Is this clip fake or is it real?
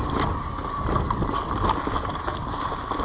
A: real